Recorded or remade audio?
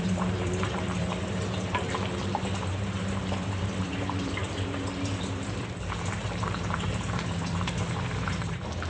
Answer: remade